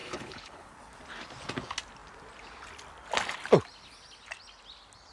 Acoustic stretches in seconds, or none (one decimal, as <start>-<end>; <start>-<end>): 0.7-5.1